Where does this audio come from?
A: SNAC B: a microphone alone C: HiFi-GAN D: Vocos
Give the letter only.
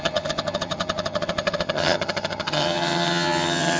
C